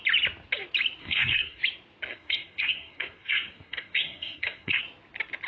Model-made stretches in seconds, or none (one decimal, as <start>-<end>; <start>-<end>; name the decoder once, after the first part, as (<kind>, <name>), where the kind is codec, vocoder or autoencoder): 1.0-1.6 (codec, SNAC); 2.1-4.8